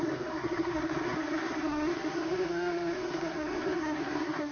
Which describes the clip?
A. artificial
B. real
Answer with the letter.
A